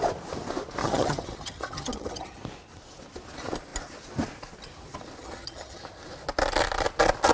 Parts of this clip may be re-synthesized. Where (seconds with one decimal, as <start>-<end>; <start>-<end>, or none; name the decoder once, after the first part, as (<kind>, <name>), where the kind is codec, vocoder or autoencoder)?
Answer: 0.8-2.4 (vocoder, HiFi-GAN); 5.2-5.8